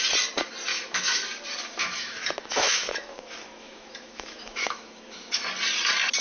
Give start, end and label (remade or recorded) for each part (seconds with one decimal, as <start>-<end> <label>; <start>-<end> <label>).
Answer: 0.0-0.7 recorded; 0.7-1.2 remade; 1.2-1.8 recorded; 1.8-5.5 remade; 5.5-6.2 recorded